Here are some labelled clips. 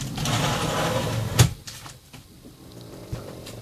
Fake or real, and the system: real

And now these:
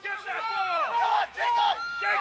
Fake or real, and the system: fake, autoencoder, DAC-VAE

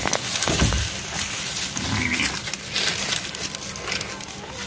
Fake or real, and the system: real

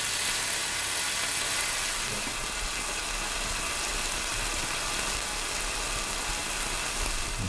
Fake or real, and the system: real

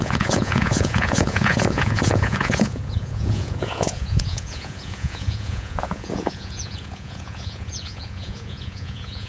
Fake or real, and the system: fake, vocoder, Vocos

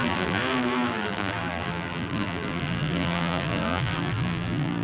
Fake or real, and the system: fake, vocoder, BigVGAN v2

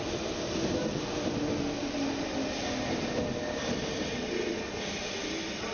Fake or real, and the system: real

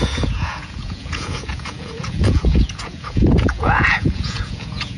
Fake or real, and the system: fake, vocoder, Vocos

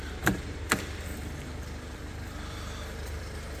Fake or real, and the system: fake, vocoder, BigVGAN v2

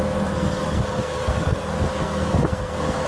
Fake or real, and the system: fake, codec, SNAC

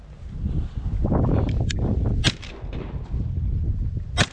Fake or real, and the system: real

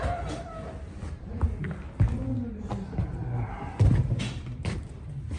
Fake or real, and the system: real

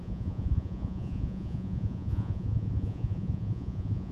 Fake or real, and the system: fake, vocoder, Vocos